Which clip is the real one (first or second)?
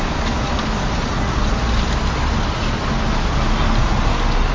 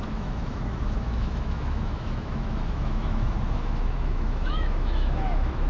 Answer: first